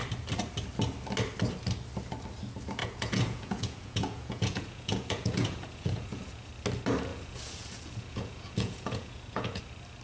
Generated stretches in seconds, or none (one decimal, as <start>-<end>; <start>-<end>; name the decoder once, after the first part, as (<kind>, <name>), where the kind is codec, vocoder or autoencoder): 2.8-6.5 (vocoder, Vocos); 7.1-9.6